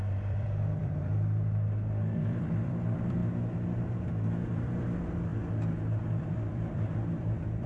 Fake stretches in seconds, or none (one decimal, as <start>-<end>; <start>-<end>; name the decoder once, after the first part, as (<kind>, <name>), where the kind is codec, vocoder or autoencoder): 0.0-3.2 (vocoder, BigVGAN v2); 4.5-5.3; 6.1-7.7